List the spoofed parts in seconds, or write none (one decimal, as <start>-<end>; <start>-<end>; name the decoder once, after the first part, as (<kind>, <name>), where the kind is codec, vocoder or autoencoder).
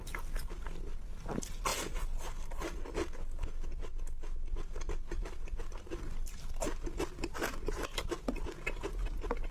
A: none